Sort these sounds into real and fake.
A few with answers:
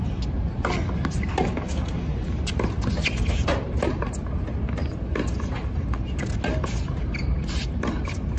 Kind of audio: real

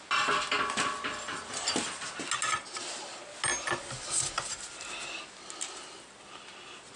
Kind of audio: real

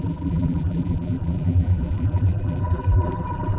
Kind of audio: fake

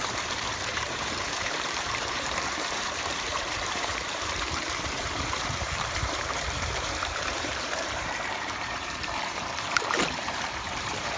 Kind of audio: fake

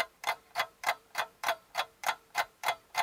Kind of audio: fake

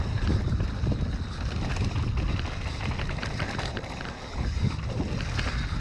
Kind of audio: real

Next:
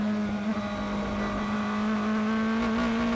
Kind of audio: real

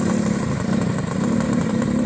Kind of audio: fake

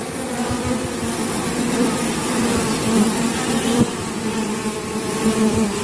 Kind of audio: fake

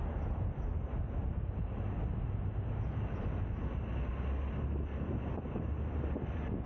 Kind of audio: real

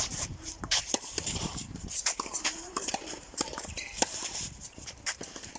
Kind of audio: fake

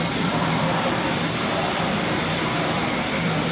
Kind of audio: fake